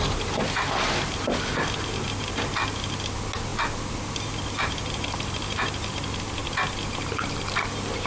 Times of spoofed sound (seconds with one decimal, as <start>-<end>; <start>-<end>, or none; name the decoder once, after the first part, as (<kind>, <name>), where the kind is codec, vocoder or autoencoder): none